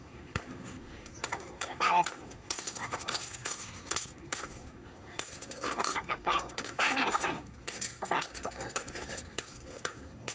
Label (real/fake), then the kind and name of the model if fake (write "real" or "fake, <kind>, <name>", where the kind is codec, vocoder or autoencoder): fake, codec, SNAC